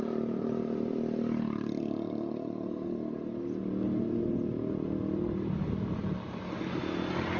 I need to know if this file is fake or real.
real